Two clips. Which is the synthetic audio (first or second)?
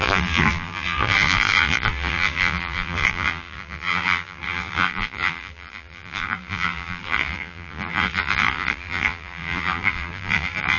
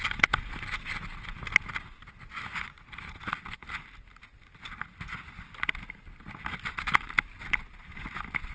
first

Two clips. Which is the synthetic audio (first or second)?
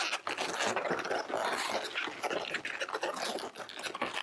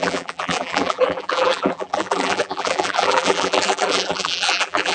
second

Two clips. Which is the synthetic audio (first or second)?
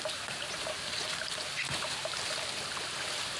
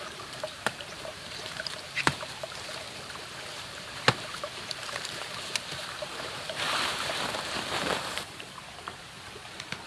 second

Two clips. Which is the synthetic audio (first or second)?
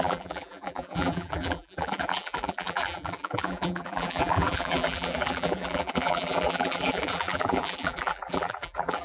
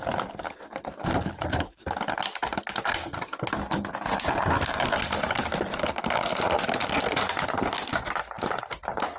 first